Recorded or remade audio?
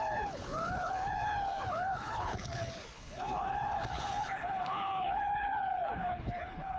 remade